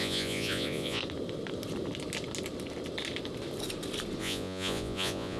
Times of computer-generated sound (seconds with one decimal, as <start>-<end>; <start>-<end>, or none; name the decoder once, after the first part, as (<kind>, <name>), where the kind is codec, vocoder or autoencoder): 0.0-1.0 (vocoder, Vocos); 4.2-5.4